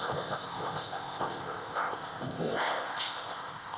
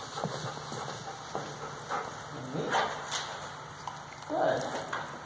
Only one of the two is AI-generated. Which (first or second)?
first